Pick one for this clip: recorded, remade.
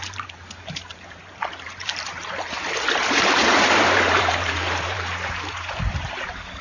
remade